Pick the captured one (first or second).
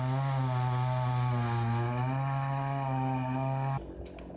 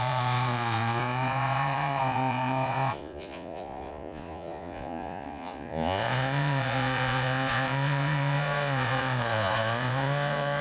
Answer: first